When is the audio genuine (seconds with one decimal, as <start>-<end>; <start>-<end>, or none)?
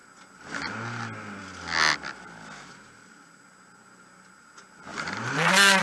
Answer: 0.0-4.9